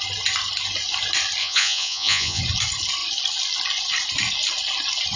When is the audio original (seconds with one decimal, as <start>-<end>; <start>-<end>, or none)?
0.0-1.4; 2.4-5.2

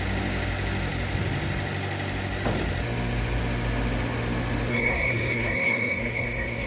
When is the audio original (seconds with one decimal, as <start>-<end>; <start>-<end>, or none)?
0.0-4.7